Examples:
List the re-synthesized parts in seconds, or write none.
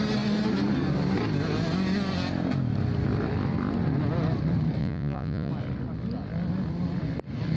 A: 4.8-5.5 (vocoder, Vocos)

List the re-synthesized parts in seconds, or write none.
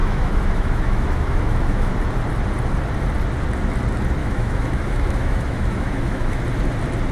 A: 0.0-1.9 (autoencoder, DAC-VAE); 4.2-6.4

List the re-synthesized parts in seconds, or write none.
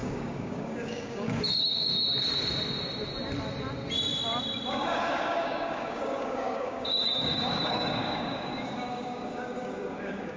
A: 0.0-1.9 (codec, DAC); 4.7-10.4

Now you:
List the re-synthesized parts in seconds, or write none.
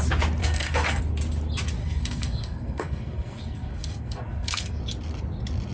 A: 0.4-1.0 (codec, SNAC); 1.8-4.8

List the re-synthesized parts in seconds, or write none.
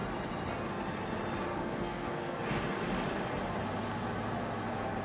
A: 1.5-2.4 (codec, SNAC)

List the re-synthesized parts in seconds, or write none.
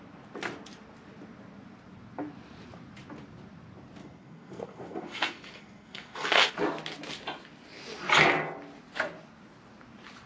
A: 4.0-6.5 (codec, SNAC)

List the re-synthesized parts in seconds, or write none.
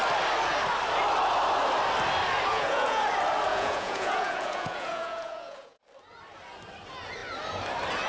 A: 2.5-3.0 (vocoder, Vocos); 3.5-5.8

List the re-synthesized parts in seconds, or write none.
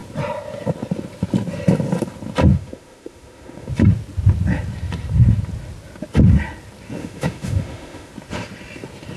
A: 2.5-3.7 (autoencoder, DAC-VAE); 7.0-8.1